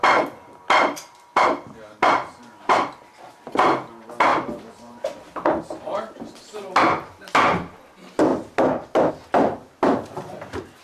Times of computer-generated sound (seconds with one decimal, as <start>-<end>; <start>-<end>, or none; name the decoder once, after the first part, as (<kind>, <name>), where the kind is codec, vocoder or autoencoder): none